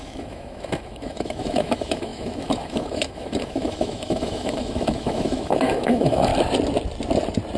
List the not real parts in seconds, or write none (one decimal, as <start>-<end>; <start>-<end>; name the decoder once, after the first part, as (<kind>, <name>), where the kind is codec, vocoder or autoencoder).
0.0-6.3 (autoencoder, DAC-VAE)